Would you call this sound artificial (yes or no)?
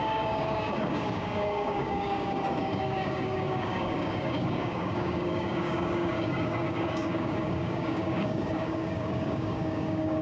yes